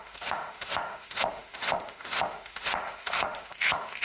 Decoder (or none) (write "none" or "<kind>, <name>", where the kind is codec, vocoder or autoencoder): autoencoder, DAC-VAE